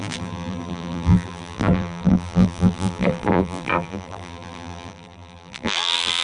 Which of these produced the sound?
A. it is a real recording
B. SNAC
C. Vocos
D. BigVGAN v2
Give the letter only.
D